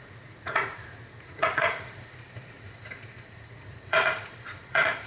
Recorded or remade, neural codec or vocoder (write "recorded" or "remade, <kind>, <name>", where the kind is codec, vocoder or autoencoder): remade, vocoder, Vocos